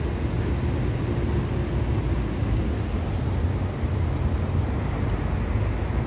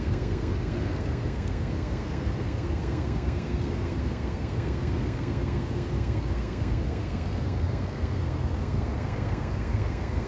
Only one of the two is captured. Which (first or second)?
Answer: first